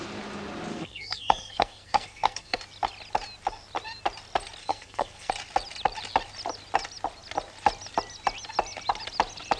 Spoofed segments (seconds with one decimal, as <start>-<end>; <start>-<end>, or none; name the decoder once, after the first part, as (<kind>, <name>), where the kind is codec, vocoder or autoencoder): 0.7-2.6 (codec, SNAC); 4.6-5.3